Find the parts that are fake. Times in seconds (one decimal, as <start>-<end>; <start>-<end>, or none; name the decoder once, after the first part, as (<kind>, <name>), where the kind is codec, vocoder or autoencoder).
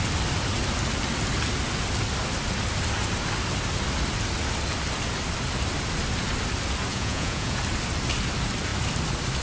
6.9-7.6 (vocoder, Vocos)